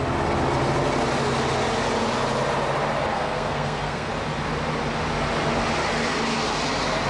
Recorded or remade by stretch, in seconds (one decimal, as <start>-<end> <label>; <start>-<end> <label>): 0.0-3.1 recorded; 3.1-4.1 remade; 4.1-7.1 recorded